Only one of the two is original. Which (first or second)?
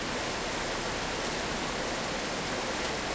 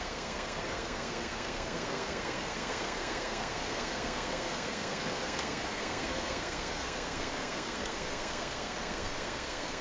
first